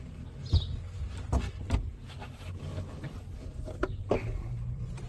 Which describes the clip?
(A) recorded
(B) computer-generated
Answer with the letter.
A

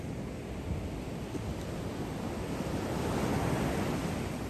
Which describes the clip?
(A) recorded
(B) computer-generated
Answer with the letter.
A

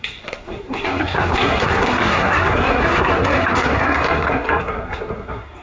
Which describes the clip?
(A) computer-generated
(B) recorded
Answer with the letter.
A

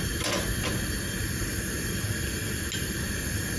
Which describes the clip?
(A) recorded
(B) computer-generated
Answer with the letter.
A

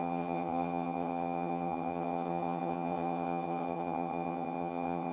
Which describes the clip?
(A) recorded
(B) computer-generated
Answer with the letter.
B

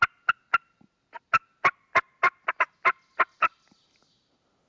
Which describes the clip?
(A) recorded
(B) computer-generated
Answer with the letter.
A